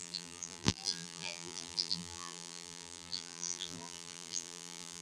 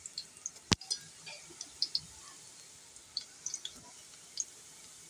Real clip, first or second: second